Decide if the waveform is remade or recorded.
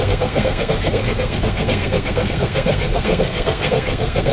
remade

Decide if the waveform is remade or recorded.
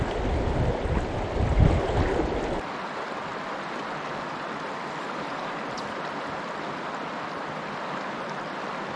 recorded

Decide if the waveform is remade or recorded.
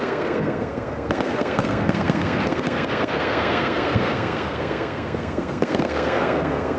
remade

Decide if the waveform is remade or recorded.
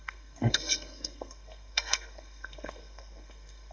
remade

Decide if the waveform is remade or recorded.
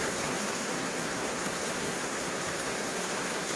remade